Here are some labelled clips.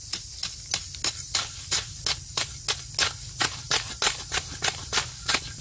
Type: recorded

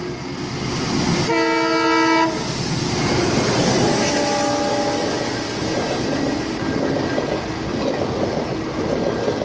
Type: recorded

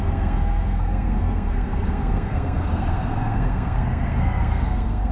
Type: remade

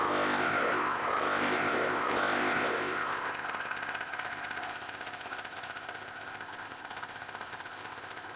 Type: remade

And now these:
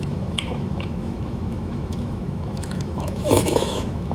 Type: remade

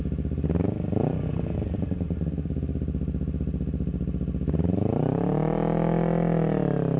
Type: recorded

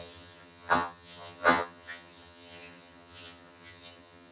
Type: remade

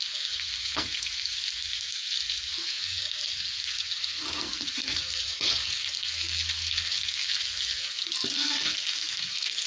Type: remade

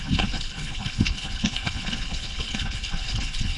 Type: remade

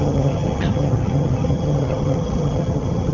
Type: remade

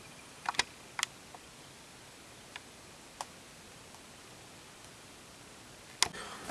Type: recorded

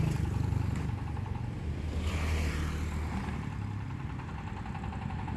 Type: recorded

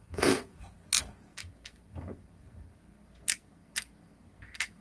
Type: remade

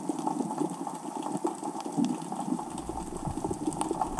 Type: recorded